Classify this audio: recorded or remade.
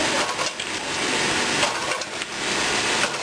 recorded